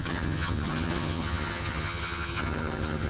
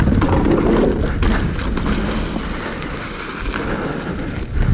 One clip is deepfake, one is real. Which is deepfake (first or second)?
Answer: first